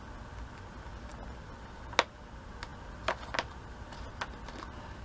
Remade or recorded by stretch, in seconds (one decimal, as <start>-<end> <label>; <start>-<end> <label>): 0.0-5.0 recorded